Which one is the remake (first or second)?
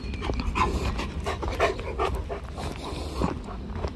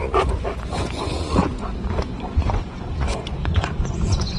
second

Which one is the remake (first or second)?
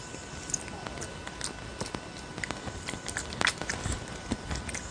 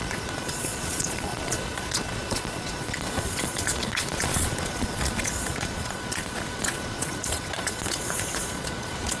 second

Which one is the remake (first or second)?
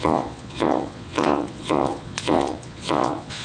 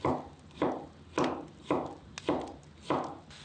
first